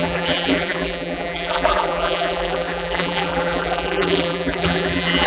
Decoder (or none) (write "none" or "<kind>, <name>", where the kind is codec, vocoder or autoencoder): vocoder, BigVGAN v2